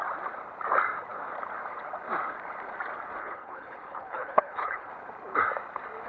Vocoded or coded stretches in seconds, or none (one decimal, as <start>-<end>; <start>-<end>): 3.2-4.9